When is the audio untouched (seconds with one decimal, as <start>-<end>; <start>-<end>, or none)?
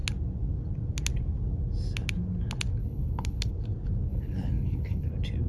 0.0-2.8; 3.5-4.1; 5.1-5.5